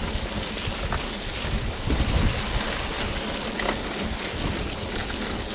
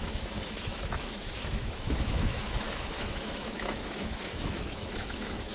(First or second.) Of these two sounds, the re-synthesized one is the second